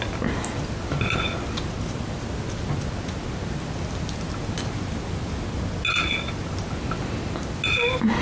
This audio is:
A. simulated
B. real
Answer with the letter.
B